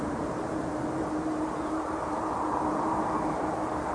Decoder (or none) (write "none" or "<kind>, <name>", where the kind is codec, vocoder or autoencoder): vocoder, BigVGAN v2